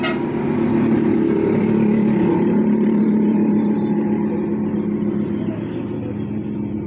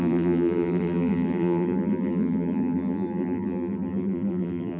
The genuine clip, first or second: first